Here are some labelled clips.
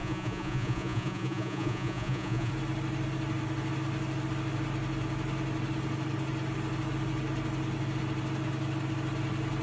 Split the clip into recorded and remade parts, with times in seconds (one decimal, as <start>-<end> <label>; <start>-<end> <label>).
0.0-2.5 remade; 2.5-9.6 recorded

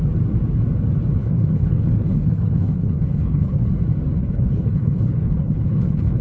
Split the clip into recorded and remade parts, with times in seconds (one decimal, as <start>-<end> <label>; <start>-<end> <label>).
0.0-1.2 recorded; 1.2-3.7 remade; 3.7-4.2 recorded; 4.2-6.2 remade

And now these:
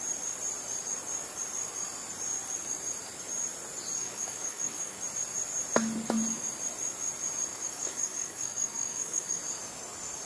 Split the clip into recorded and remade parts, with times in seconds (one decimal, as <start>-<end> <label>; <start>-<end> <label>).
0.0-4.0 recorded; 4.0-5.0 remade; 5.0-7.5 recorded; 7.5-9.4 remade; 9.4-10.3 recorded

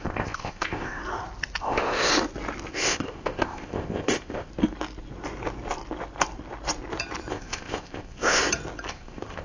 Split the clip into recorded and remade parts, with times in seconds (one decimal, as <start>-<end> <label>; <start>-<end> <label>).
0.0-1.0 remade; 1.0-1.6 recorded; 1.6-2.1 remade; 2.1-2.7 recorded; 2.7-4.5 remade; 4.5-7.3 recorded; 7.3-8.4 remade; 8.4-8.9 recorded; 8.9-9.4 remade